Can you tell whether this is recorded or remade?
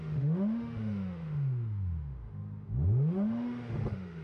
remade